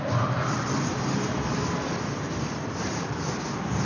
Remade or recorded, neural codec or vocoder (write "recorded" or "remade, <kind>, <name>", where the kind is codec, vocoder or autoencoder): recorded